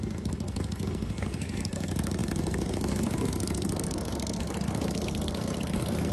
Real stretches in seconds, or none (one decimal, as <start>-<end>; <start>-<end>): none